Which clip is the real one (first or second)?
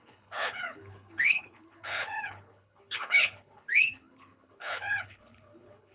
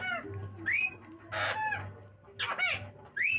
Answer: second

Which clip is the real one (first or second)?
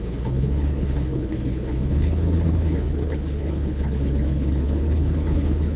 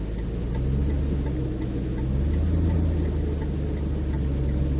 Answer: second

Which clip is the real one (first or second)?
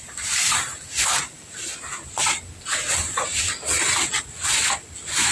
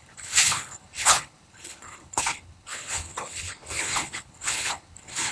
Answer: first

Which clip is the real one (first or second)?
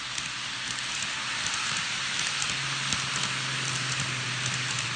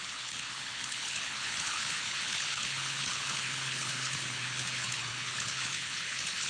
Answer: first